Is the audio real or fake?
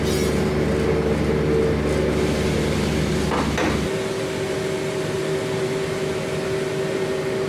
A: real